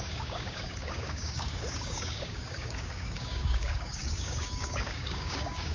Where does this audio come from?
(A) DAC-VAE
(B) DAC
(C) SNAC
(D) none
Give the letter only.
B